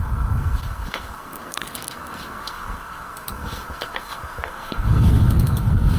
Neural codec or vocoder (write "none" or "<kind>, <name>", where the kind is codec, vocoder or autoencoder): codec, SNAC